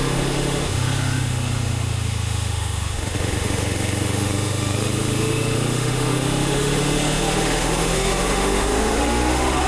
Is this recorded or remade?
remade